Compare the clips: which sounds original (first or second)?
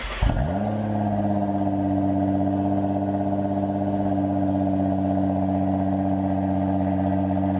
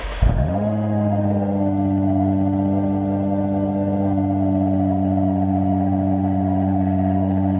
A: first